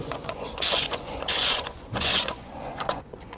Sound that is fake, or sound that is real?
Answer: fake